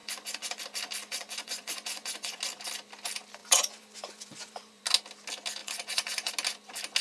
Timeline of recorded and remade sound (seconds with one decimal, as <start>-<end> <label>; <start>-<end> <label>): 0.0-0.6 remade; 0.6-1.0 recorded; 1.0-2.4 remade; 2.4-3.4 recorded; 3.4-4.8 remade; 4.8-5.6 recorded; 5.6-6.3 remade; 6.3-7.0 recorded